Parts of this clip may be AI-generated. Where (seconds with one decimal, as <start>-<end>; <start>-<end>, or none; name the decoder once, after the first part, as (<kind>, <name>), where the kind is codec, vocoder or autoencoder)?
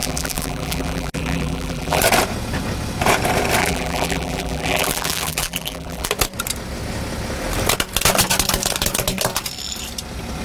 0.0-2.0 (vocoder, BigVGAN v2); 3.6-6.1